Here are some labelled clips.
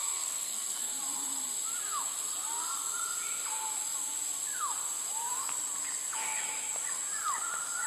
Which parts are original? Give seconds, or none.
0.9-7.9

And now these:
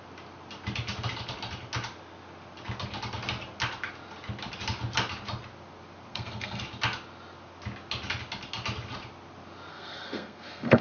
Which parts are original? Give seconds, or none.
0.0-6.1; 6.6-9.7

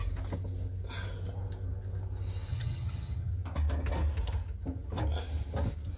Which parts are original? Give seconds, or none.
0.0-2.5; 3.3-6.0

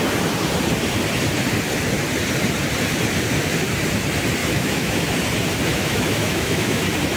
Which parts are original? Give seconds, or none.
0.0-4.4; 5.0-5.7; 6.8-7.2